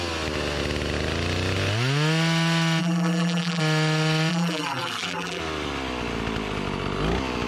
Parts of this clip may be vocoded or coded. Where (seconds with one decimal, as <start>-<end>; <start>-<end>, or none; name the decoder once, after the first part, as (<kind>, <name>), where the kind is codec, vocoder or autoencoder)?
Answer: 2.8-3.6 (vocoder, BigVGAN v2); 4.3-5.4